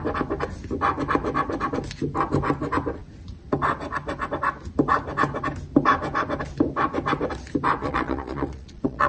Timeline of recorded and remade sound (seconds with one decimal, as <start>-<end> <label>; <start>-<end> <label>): 0.0-7.8 recorded; 7.8-9.1 remade